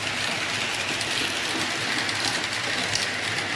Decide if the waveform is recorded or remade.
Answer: recorded